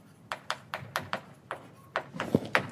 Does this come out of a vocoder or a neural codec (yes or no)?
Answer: no